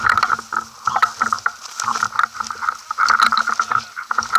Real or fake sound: real